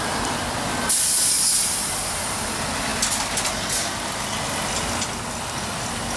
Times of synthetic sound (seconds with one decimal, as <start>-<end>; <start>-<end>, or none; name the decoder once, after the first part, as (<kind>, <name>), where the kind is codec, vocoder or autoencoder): none